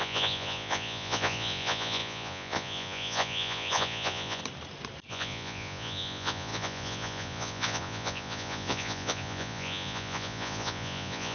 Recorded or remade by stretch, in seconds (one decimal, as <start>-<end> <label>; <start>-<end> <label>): 0.0-4.4 remade; 4.4-5.1 recorded; 5.1-11.3 remade